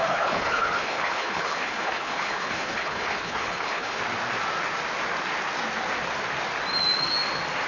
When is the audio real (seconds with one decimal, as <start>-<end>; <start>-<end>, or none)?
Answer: 4.0-7.7